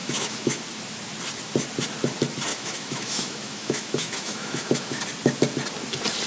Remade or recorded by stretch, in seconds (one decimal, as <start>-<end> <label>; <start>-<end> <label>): 0.0-0.6 remade; 0.6-2.5 recorded; 2.5-5.0 remade; 5.0-6.3 recorded